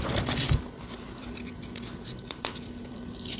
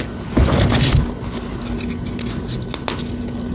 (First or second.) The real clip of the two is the second